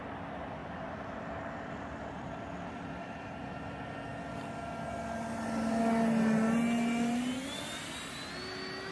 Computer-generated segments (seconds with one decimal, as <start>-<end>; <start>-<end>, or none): 0.6-2.3